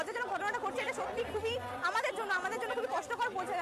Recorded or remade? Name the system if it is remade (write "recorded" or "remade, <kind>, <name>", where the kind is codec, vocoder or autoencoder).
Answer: recorded